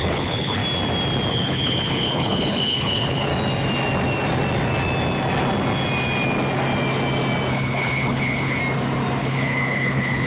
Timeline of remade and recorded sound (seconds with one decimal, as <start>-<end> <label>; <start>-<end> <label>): 0.0-0.6 remade; 0.6-1.3 recorded; 1.3-3.3 remade; 3.3-7.5 recorded; 7.5-8.6 remade; 8.6-9.2 recorded; 9.2-10.3 remade